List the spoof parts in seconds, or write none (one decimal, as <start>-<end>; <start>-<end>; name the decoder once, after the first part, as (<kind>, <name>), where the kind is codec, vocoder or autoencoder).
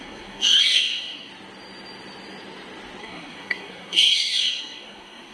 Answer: 0.0-1.3 (codec, SNAC); 3.0-5.3